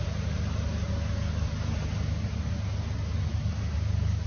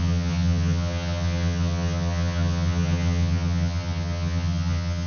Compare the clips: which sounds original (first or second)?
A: first